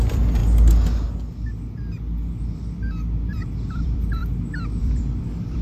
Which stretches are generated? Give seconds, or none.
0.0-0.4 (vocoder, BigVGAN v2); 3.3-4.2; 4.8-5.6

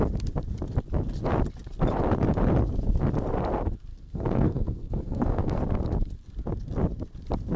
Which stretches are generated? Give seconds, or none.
3.9-5.6 (codec, SNAC)

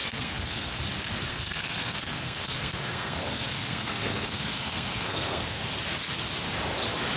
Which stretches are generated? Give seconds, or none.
0.0-0.8 (codec, SNAC); 1.3-5.6

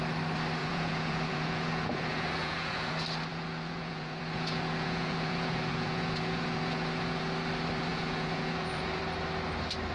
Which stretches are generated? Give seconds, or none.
0.6-2.9 (vocoder, Vocos); 3.3-7.2; 7.9-9.0

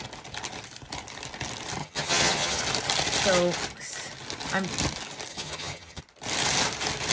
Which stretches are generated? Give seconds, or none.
1.8-2.6 (vocoder, HiFi-GAN); 5.3-6.0

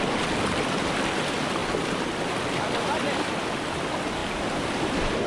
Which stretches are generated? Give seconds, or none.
4.2-5.3 (vocoder, BigVGAN v2)

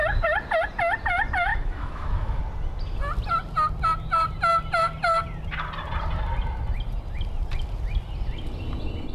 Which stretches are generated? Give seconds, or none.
1.5-2.4 (autoencoder, DAC-VAE)

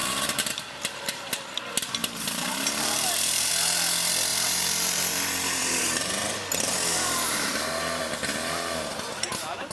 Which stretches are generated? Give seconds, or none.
0.0-1.4 (vocoder, BigVGAN v2); 2.0-3.5; 4.3-8.0